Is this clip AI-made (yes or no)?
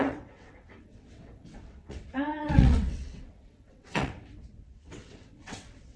yes